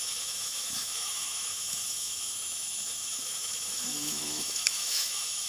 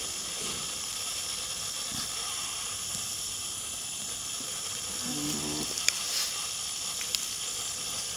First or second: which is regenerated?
first